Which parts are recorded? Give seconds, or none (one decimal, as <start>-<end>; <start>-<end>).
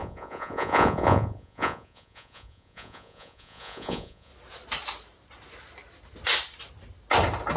4.3-7.6